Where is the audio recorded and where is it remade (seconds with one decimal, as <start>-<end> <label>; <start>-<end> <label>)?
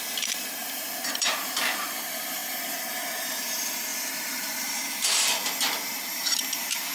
0.0-2.4 remade; 2.4-3.2 recorded; 3.2-6.9 remade